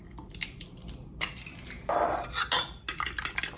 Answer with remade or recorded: recorded